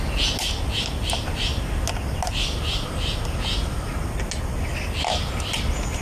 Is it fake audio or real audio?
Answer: real